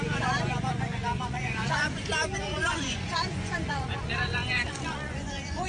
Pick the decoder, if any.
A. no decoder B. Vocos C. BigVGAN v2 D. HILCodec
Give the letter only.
B